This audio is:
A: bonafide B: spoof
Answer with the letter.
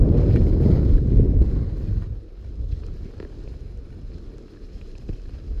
A